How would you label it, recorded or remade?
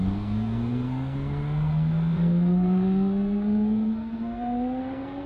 remade